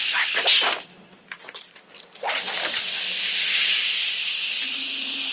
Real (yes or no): yes